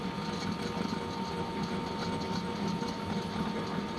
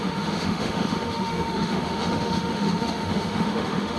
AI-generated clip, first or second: second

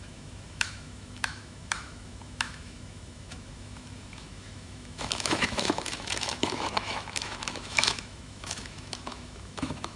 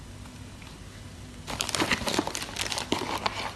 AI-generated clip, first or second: first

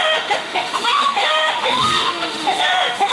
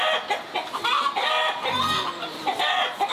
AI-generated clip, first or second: first